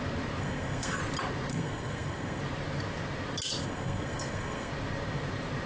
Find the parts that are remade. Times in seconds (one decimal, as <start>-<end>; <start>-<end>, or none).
0.4-1.0; 1.5-2.4; 3.6-4.7

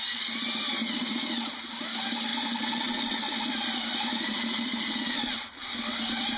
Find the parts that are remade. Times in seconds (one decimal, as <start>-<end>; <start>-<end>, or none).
2.3-5.0

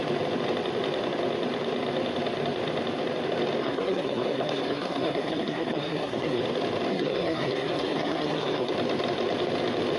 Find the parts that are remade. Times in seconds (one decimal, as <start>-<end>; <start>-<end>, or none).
3.6-6.4; 6.9-8.7